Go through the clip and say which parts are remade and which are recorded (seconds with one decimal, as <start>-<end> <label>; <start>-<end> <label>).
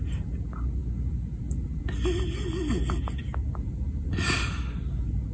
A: 0.0-5.3 recorded